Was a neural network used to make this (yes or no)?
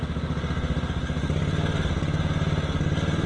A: no